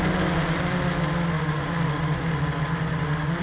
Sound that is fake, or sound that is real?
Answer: real